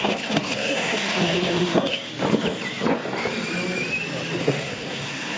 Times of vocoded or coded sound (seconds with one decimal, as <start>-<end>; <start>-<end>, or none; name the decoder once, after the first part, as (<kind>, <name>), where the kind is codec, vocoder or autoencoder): 0.0-2.1 (codec, SNAC); 4.4-5.4